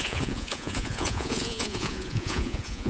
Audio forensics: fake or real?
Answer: fake